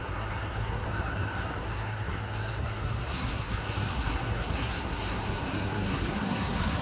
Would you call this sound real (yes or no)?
no